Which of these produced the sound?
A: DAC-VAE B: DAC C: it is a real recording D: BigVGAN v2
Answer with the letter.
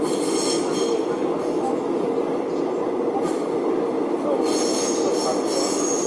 C